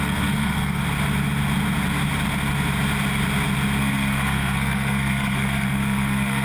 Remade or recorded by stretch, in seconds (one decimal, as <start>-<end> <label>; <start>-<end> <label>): 0.0-0.8 remade; 0.8-3.8 recorded; 3.8-6.4 remade